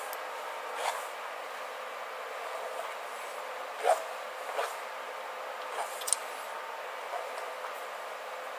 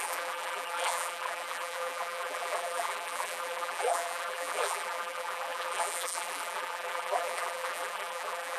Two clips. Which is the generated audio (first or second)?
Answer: second